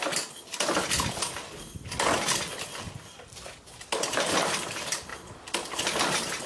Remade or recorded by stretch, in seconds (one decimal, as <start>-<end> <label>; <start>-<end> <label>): 0.0-6.5 recorded